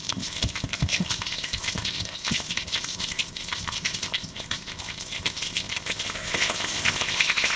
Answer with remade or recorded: remade